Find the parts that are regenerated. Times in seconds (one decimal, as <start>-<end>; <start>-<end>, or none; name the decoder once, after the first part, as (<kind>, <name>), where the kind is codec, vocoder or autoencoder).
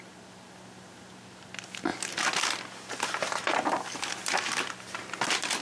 4.2-5.0 (vocoder, BigVGAN v2)